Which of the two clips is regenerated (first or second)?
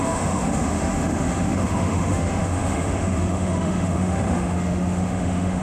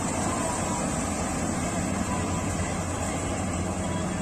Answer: first